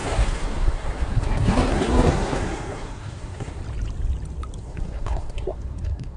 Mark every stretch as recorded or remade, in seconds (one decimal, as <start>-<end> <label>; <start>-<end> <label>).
0.0-3.6 remade; 3.6-4.6 recorded; 4.6-6.2 remade